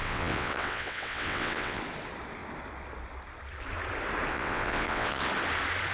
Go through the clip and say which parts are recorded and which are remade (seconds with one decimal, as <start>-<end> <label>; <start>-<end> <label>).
0.0-1.8 remade; 1.8-4.3 recorded; 4.3-5.3 remade; 5.3-5.9 recorded